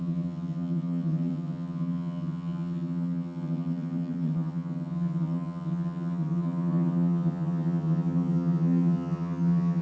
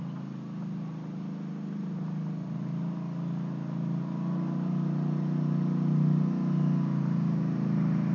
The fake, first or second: first